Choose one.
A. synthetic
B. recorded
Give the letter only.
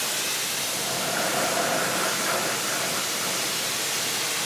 B